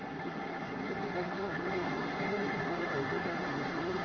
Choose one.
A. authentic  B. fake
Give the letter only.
B